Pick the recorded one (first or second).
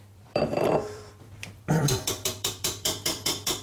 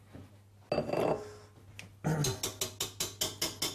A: second